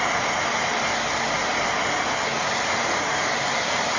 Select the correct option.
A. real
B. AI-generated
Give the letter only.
A